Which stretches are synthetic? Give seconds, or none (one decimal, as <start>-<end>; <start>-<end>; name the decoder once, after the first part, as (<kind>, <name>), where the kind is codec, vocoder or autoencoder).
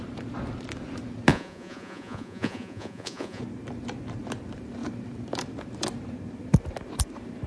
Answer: 1.3-3.4 (vocoder, Vocos)